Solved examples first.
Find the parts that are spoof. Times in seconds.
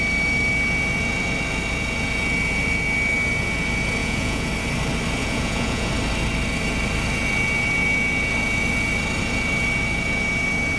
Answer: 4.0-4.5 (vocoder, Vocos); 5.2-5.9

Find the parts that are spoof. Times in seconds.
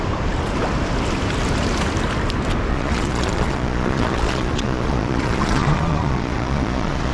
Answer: 2.7-7.1 (vocoder, Vocos)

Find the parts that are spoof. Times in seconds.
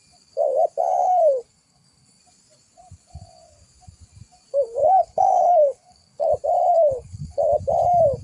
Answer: 1.0-2.2 (codec, HILCodec); 4.8-6.3; 6.7-7.4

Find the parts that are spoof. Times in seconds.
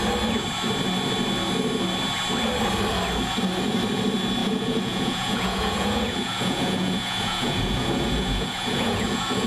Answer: 4.4-9.5 (vocoder, Vocos)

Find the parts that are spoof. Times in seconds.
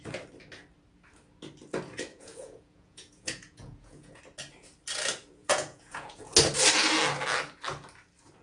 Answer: 2.1-4.2 (vocoder, Vocos); 5.4-6.3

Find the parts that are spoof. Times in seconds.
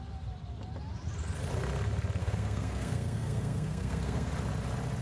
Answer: 2.2-4.3 (codec, SNAC)